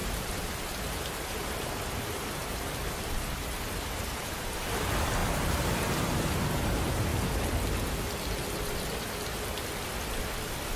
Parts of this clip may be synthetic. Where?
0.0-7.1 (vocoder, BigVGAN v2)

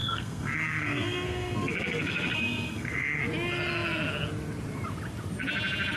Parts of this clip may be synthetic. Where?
0.0-3.2 (codec, SNAC)